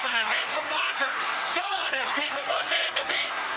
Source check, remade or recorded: remade